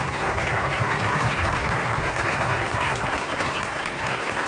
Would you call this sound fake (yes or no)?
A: yes